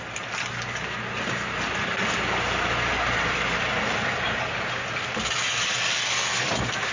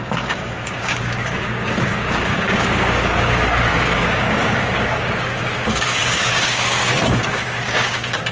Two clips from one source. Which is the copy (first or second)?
second